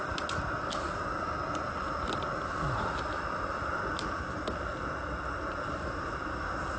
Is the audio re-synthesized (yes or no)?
no